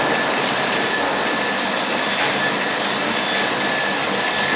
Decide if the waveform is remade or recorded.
recorded